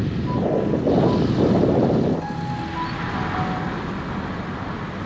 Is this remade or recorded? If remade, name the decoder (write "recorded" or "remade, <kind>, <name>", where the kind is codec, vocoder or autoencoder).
recorded